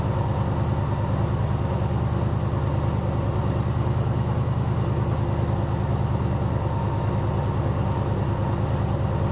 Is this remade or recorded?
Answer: recorded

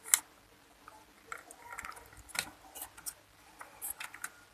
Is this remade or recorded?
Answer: recorded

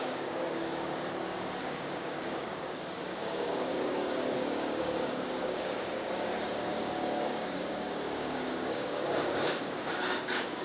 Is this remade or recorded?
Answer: remade